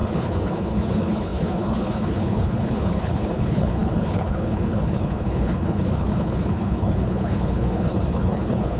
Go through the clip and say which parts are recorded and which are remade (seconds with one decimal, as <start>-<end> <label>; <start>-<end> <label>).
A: 0.0-8.8 remade